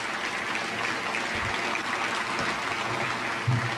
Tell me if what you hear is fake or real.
real